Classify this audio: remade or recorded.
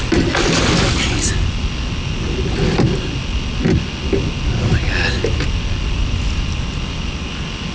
recorded